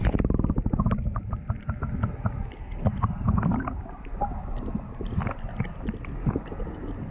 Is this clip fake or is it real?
real